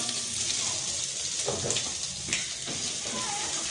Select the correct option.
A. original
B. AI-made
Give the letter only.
A